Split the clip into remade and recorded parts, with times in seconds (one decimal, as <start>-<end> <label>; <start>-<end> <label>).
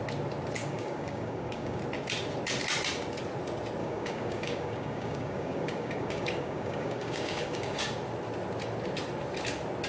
0.0-0.6 recorded; 0.6-1.8 remade; 1.8-3.8 recorded; 3.8-7.8 remade; 7.8-9.9 recorded